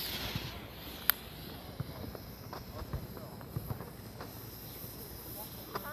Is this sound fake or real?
real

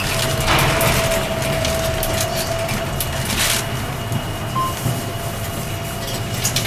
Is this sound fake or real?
real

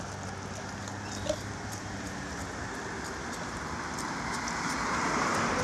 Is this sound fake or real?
real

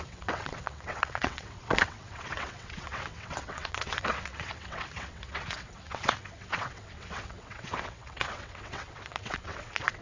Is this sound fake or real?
fake